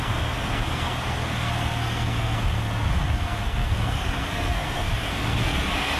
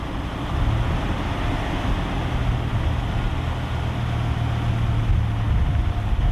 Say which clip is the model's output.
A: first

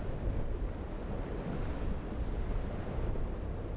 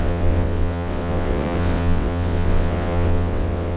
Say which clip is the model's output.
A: second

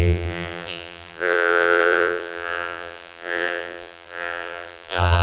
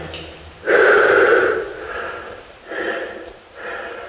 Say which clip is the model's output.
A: first